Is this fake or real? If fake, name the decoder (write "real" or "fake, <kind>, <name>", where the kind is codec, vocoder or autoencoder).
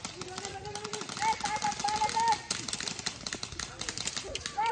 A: real